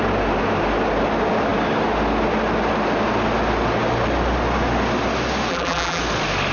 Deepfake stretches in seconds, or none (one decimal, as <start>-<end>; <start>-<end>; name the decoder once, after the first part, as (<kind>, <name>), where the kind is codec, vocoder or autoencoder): 5.5-6.0 (vocoder, BigVGAN v2)